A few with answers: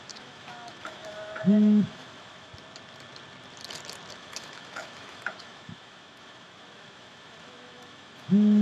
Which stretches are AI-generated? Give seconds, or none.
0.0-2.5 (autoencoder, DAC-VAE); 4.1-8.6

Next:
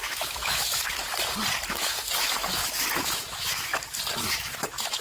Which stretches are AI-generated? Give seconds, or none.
0.0-1.0 (autoencoder, DAC-VAE); 1.7-3.7; 4.3-5.0